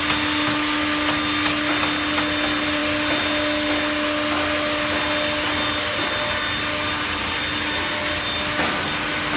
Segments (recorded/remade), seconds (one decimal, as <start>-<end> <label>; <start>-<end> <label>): 0.0-9.4 recorded